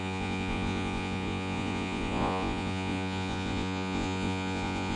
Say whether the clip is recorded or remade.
remade